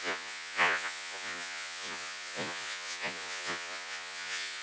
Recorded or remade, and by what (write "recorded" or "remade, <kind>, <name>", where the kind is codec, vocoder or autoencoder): remade, vocoder, Vocos